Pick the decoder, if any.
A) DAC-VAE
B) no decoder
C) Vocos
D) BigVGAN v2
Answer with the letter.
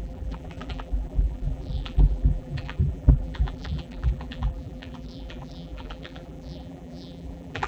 D